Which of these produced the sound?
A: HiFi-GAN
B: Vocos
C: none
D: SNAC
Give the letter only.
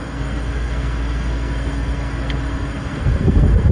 D